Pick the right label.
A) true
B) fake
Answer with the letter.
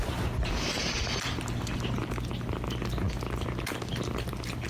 A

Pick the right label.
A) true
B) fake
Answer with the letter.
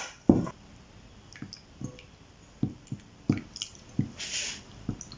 A